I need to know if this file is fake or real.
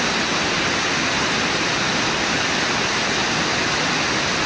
real